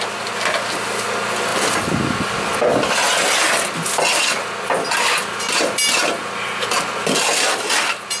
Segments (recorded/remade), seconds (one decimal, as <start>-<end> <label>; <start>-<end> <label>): 0.0-8.2 recorded